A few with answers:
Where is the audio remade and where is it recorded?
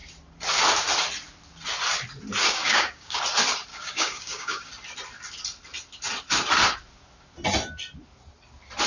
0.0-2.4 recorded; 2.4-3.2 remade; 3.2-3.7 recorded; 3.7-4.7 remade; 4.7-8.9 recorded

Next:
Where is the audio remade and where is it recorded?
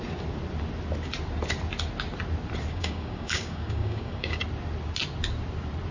0.0-2.7 recorded; 2.7-4.4 remade; 4.4-5.9 recorded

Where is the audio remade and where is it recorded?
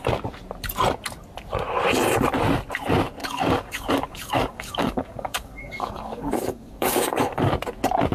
0.0-3.2 recorded; 3.2-7.5 remade; 7.5-8.1 recorded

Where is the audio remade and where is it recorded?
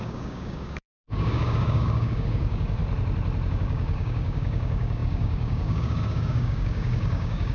0.0-2.8 remade; 2.8-3.5 recorded; 3.5-7.5 remade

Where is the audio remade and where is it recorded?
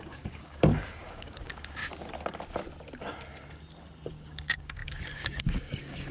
0.0-1.8 remade; 1.8-4.1 recorded; 4.1-6.1 remade